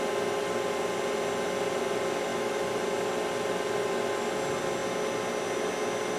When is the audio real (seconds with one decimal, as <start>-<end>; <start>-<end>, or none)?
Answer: 0.0-2.3; 2.8-6.2